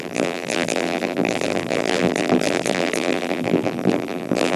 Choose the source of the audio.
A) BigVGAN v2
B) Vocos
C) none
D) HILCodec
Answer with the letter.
A